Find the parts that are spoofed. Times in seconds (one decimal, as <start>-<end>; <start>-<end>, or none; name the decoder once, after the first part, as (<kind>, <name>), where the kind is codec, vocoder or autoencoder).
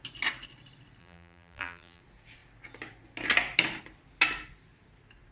1.0-2.0 (vocoder, BigVGAN v2)